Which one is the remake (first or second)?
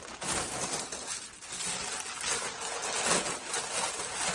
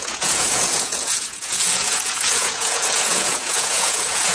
second